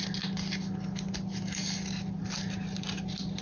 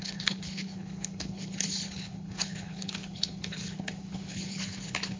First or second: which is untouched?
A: first